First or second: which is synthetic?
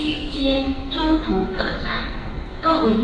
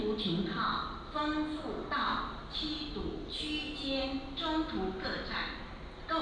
first